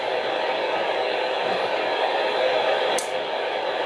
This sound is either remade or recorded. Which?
remade